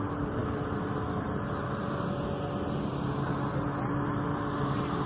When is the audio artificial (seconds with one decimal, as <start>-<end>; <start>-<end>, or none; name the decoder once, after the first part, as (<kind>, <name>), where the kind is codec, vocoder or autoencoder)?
none